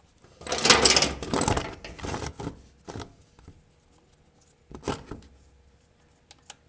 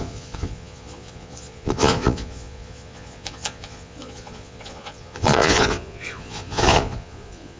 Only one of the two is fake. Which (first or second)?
second